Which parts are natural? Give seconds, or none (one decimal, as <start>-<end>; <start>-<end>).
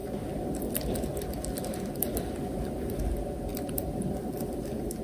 3.0-3.5